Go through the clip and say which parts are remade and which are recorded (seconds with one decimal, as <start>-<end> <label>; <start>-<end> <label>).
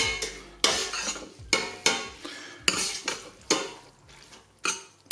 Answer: 0.0-5.1 recorded